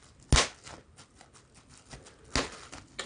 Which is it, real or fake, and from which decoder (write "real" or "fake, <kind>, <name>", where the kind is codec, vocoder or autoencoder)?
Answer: real